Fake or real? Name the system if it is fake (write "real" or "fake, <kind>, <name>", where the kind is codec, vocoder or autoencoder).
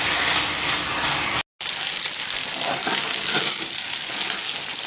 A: real